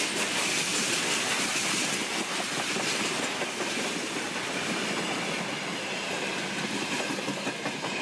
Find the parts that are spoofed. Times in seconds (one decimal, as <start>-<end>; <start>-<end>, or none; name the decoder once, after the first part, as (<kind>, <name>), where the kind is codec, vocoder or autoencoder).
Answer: none